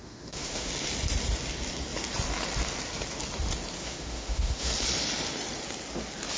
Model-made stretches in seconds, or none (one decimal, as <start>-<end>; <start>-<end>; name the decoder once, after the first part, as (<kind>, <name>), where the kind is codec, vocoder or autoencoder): 0.0-0.7 (autoencoder, DAC-VAE); 3.8-4.7